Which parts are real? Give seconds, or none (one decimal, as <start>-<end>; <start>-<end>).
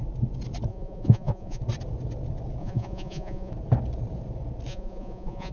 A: 0.0-0.7; 1.6-2.6; 3.5-4.7